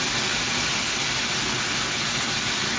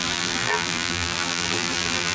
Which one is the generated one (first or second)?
second